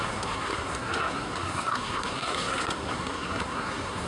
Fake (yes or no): yes